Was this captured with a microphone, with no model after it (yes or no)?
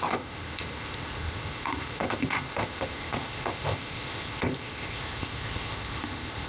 no